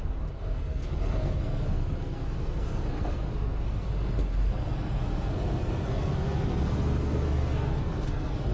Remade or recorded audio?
remade